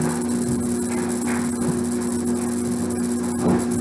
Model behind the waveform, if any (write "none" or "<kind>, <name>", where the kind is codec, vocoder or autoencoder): none